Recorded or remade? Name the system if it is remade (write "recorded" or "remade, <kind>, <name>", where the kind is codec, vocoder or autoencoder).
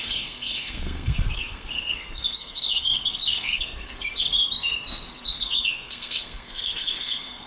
remade, codec, SNAC